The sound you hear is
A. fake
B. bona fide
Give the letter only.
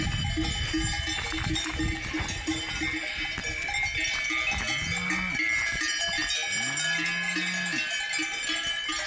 B